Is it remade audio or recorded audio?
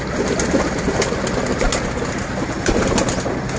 recorded